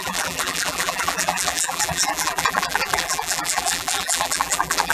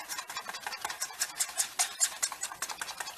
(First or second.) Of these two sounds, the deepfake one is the first